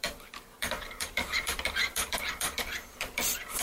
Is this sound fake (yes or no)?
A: yes